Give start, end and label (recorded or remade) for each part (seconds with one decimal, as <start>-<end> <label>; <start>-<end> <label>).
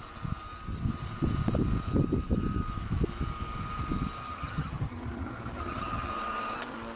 0.0-4.2 recorded; 4.2-6.1 remade; 6.1-7.0 recorded